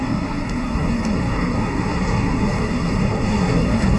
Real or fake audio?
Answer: fake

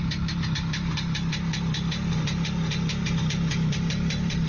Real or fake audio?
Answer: real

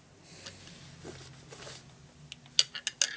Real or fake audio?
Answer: real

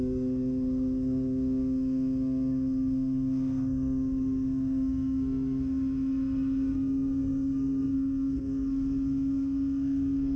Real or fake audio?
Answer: fake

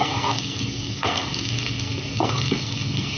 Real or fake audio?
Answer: fake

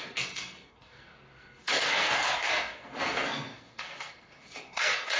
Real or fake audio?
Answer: fake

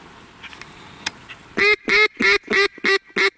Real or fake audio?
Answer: real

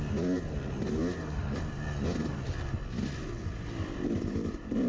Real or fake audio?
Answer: real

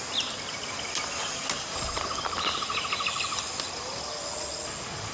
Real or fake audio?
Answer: real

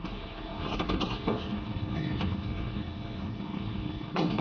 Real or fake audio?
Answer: fake